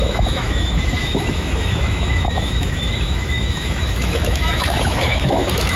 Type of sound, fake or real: fake